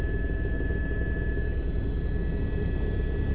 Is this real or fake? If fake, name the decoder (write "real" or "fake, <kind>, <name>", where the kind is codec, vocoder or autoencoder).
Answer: real